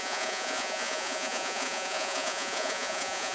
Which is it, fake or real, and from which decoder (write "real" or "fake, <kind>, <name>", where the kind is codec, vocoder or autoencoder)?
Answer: fake, vocoder, Vocos